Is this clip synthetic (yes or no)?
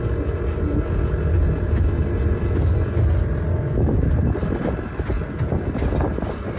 no